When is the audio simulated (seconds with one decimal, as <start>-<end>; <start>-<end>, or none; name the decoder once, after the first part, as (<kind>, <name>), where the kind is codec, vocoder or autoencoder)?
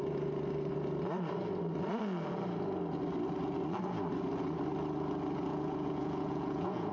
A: 5.5-6.9 (vocoder, Vocos)